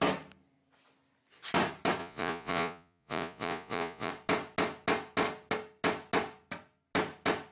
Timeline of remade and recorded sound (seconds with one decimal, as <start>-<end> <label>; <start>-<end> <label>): 0.0-2.0 recorded; 2.0-4.1 remade; 4.1-7.5 recorded